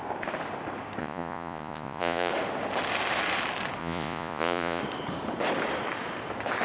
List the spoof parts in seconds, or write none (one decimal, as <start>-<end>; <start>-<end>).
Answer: 1.0-2.3; 3.8-4.8